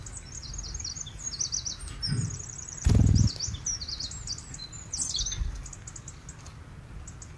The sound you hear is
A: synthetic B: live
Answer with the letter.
B